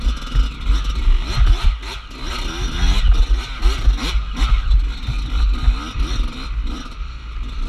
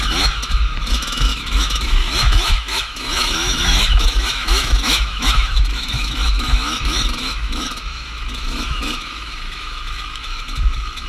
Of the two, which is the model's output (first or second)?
second